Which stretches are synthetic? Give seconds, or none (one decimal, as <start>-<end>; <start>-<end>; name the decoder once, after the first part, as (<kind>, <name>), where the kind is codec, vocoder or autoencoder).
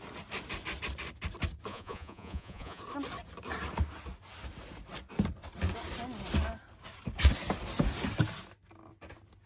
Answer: 1.7-2.8 (vocoder, Vocos)